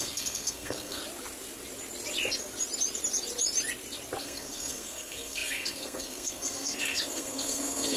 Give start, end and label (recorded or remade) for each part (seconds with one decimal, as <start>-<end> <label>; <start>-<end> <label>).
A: 0.0-1.0 remade; 1.0-4.2 recorded; 4.2-8.0 remade